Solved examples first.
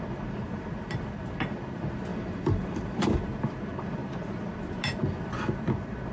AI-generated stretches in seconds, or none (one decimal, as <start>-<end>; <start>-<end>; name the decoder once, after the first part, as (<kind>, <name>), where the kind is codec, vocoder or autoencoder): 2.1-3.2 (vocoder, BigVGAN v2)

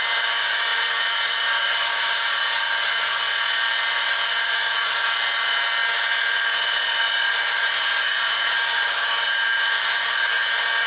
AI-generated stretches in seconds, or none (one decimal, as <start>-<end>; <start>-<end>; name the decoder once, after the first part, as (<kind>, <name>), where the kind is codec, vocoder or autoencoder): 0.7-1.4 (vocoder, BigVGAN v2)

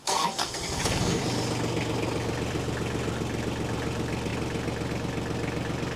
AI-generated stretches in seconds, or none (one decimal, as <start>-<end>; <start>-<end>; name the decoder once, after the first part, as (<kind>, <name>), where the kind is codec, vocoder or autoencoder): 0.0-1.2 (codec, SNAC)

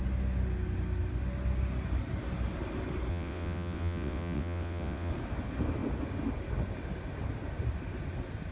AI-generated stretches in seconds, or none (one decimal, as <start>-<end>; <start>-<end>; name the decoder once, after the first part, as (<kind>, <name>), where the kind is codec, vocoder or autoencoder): 3.1-5.1 (vocoder, WaveNeXt)

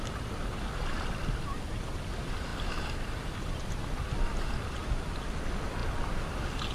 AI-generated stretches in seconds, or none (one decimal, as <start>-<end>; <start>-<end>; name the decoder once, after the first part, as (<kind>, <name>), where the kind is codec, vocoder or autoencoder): none